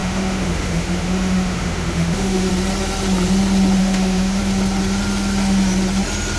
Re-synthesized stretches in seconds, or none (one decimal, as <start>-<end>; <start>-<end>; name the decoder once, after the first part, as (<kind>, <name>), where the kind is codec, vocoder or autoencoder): 0.0-2.5 (autoencoder, DAC-VAE); 3.8-4.4